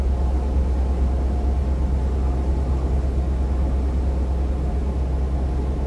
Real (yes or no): yes